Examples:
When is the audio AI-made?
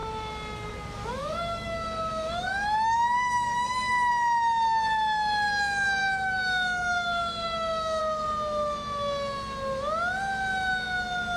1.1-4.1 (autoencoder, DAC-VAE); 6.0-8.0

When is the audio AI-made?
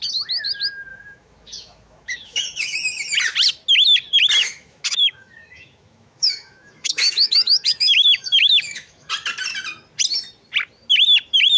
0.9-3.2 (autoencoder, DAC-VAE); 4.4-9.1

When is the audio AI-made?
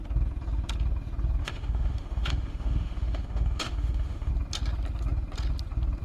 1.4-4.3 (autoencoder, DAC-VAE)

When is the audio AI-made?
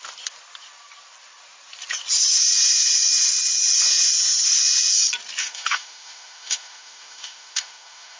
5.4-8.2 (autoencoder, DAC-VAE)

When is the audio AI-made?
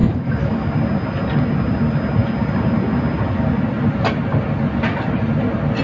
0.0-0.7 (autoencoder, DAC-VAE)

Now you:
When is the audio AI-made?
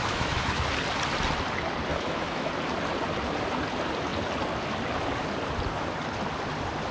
0.0-0.7 (autoencoder, DAC-VAE); 1.9-2.5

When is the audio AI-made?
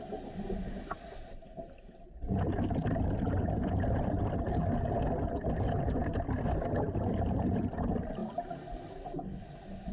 none